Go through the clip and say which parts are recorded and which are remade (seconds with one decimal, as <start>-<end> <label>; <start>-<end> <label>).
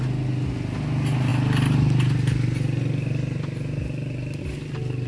0.0-5.1 recorded